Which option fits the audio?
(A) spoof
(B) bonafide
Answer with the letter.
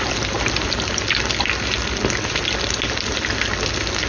B